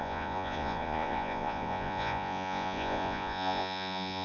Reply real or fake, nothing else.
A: fake